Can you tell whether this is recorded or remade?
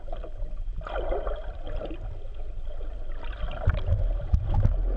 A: recorded